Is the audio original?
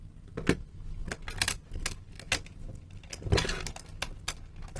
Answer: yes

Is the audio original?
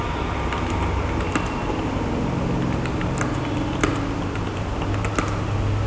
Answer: yes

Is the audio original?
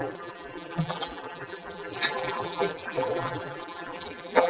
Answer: no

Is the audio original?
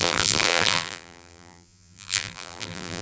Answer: no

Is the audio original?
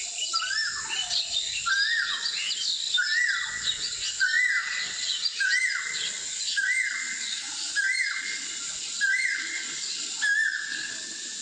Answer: yes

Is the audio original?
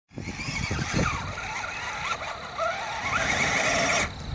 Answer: yes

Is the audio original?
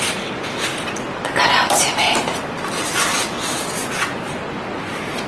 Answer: yes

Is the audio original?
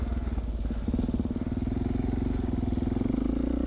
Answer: yes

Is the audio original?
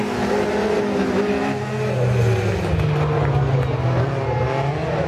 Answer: yes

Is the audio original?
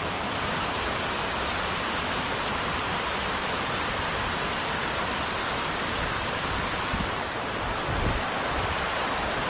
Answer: no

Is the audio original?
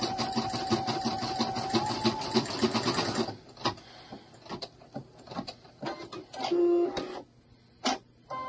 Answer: yes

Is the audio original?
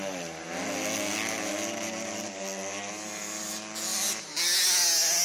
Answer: yes